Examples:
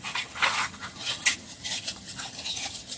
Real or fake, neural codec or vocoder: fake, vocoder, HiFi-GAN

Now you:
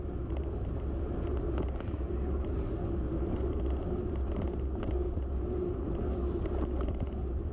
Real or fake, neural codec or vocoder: real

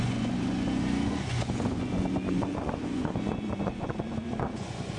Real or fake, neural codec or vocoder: fake, vocoder, Vocos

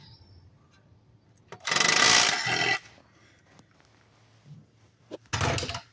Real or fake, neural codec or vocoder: real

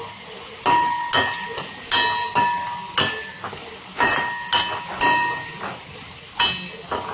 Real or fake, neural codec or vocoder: real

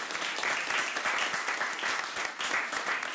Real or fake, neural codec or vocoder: real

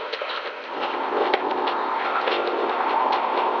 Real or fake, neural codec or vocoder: fake, codec, ZipCodec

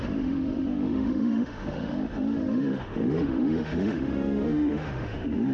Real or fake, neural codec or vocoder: fake, autoencoder, DAC-VAE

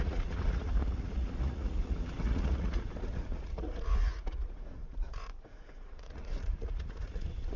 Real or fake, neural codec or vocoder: fake, vocoder, Vocos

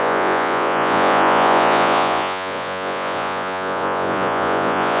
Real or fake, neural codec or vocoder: fake, vocoder, Vocos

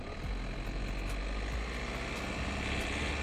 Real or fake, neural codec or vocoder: real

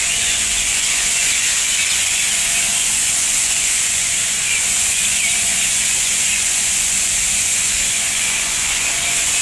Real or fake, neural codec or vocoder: fake, vocoder, Vocos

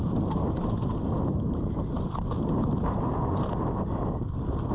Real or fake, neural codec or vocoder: real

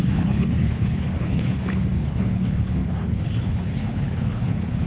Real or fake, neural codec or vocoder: fake, codec, HILCodec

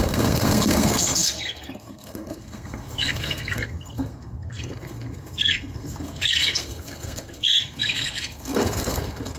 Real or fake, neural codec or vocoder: fake, codec, SNAC